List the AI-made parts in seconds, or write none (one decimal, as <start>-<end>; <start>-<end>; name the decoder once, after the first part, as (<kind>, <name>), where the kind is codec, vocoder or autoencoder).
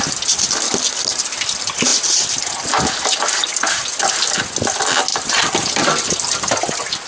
3.5-4.4 (vocoder, BigVGAN v2); 5.1-7.1